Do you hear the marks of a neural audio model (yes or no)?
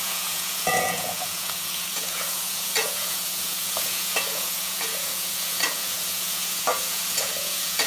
yes